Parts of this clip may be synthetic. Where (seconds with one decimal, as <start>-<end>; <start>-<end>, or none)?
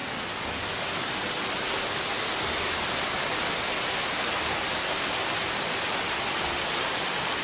none